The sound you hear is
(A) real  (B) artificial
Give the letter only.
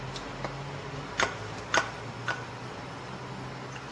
A